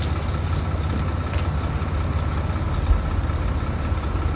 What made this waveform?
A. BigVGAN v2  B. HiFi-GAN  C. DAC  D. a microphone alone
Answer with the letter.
D